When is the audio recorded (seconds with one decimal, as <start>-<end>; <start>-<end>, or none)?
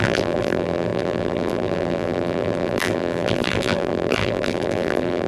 none